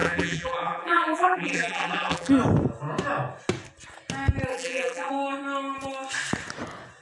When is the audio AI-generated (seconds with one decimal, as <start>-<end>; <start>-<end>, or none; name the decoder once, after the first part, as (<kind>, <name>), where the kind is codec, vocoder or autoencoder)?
0.0-2.3 (vocoder, BigVGAN v2); 4.5-5.1